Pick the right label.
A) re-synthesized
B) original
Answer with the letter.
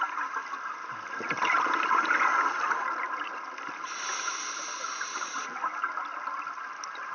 B